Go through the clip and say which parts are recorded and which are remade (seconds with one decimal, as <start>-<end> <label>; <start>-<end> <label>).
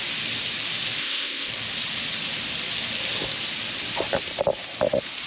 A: 0.0-1.0 recorded; 1.0-1.5 remade; 1.5-5.3 recorded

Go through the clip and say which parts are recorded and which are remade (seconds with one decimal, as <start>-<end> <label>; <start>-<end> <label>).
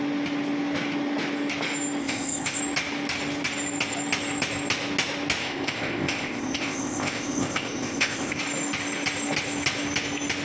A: 0.0-2.0 recorded; 2.0-2.6 remade; 2.6-5.4 recorded; 5.4-8.4 remade; 8.4-10.4 recorded